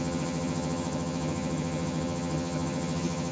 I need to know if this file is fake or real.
fake